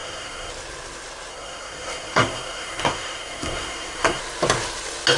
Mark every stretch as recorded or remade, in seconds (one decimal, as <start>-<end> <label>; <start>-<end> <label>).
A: 0.0-0.5 remade; 0.5-1.3 recorded; 1.3-4.2 remade; 4.2-5.2 recorded